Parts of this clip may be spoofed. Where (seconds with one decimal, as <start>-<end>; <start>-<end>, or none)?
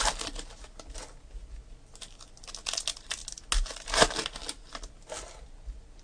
none